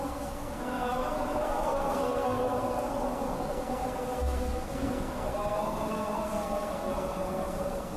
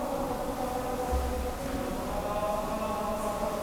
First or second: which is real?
second